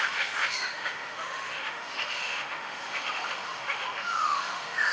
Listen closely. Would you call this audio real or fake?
fake